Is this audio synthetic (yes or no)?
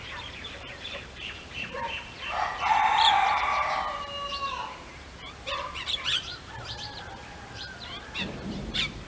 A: yes